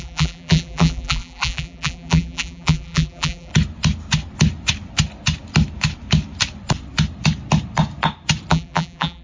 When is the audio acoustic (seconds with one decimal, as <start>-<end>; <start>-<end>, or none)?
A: 3.5-8.5